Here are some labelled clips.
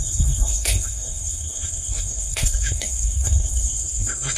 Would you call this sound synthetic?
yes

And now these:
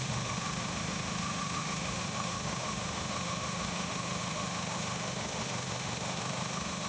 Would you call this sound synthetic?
yes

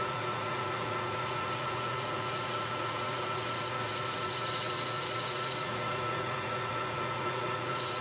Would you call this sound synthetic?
yes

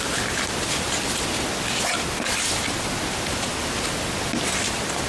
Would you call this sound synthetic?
no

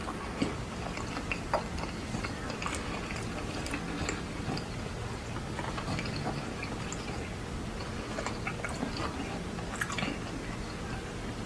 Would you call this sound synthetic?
no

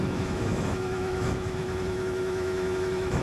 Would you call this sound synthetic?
yes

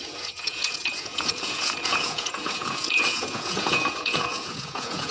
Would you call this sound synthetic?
yes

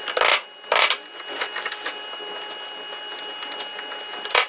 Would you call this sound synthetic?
no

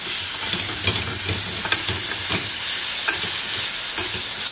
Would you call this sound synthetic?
no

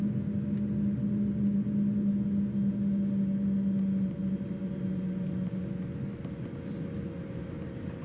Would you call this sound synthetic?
no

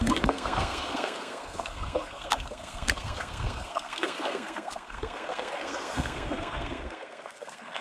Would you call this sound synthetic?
yes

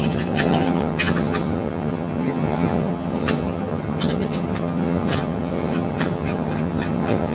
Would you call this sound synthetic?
yes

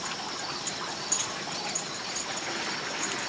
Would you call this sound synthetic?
no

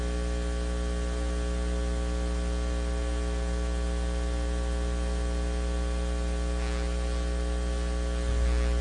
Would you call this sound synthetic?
no